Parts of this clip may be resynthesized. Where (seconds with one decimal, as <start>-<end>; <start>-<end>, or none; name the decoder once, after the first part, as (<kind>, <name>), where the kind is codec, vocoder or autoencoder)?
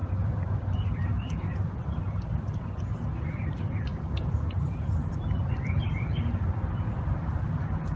0.0-2.8 (vocoder, BigVGAN v2); 3.9-8.0